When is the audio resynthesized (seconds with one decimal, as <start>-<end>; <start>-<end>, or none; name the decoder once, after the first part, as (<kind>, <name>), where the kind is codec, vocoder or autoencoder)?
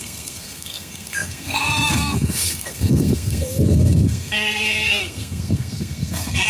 0.0-6.5 (codec, SNAC)